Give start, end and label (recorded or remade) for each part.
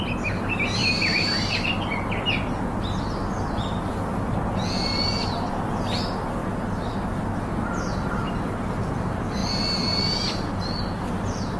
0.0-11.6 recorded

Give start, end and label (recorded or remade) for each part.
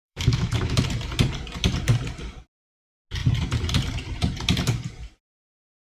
0.0-0.8 remade; 0.8-5.8 recorded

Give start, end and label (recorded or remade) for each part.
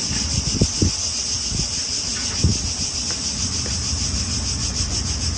0.0-5.4 recorded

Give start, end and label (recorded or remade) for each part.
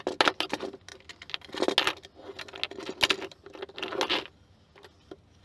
0.0-5.4 recorded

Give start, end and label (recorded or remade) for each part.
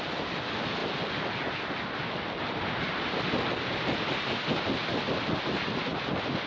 0.0-6.5 recorded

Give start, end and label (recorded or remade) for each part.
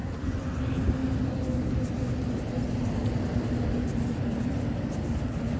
0.0-0.6 remade; 0.6-5.6 recorded